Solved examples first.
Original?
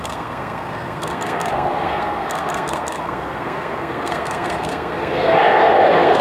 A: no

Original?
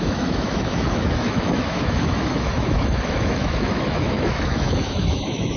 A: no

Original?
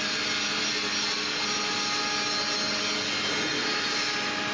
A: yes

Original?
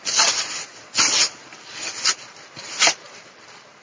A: yes